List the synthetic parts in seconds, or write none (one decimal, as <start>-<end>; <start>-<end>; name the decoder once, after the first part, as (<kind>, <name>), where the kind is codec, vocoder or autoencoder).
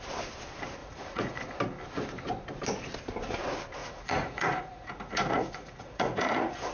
0.8-1.4 (vocoder, Vocos); 3.8-6.7